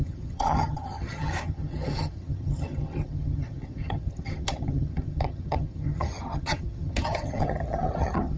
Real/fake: fake